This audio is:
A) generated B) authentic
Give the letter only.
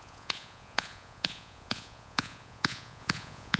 A